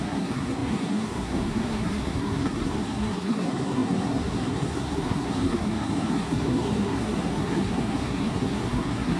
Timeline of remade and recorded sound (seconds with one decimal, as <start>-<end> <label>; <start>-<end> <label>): 0.0-9.2 remade